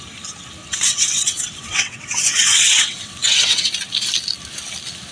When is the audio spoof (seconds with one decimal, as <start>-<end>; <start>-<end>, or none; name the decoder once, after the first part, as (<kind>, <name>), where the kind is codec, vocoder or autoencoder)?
0.6-3.7 (vocoder, WaveNeXt)